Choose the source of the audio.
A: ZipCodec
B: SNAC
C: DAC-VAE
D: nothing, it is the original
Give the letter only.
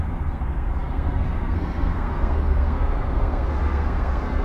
B